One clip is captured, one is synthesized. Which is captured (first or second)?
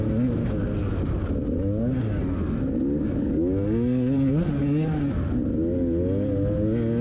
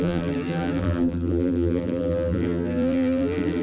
first